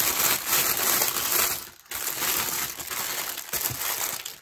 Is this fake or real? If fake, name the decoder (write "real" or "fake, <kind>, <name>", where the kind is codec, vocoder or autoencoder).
real